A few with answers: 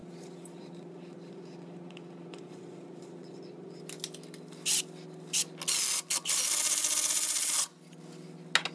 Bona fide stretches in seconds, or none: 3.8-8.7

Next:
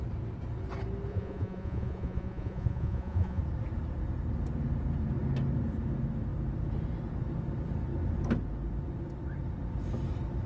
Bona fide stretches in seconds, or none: 0.0-1.1; 3.4-10.5

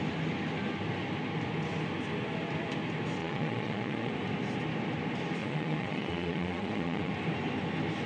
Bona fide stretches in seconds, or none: 0.0-3.2; 4.1-5.4; 7.1-8.1

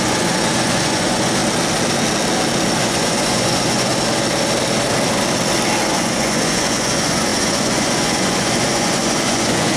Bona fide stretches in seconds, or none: 1.4-2.8; 3.9-5.8

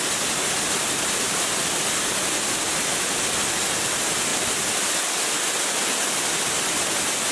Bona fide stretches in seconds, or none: 0.0-7.3

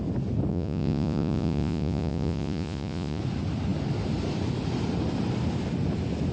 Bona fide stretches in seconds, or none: 0.0-0.5; 3.2-6.3